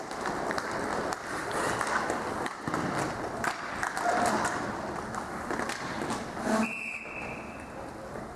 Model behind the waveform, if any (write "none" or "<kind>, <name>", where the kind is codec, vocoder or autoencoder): none